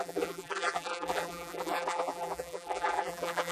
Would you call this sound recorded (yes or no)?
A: no